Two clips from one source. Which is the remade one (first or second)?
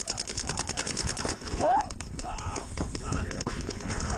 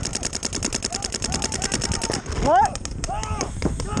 first